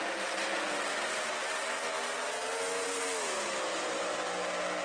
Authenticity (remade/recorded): recorded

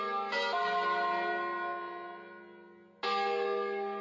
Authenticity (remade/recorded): recorded